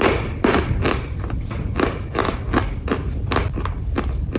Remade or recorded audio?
remade